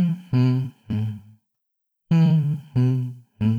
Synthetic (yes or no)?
yes